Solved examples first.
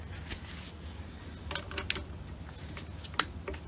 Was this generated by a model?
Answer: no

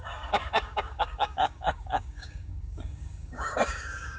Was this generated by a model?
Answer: yes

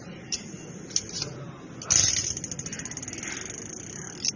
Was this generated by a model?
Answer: no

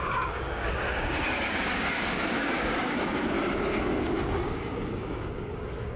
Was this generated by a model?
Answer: yes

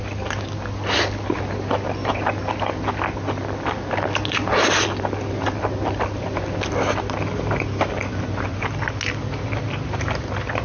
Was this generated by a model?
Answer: no